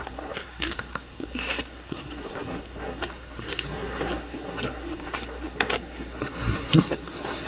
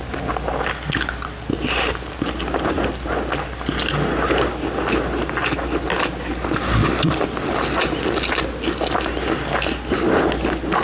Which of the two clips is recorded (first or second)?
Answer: second